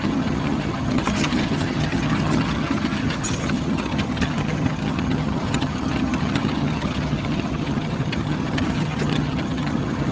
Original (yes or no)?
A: no